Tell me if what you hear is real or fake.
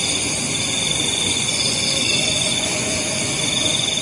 fake